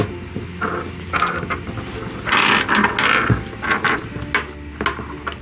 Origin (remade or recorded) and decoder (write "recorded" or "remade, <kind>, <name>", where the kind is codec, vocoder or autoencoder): recorded